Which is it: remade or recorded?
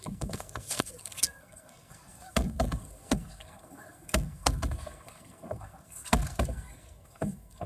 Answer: remade